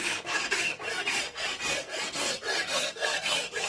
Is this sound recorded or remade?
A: remade